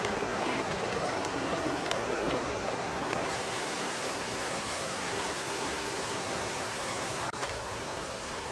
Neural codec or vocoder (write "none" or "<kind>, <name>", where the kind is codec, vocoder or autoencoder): codec, SNAC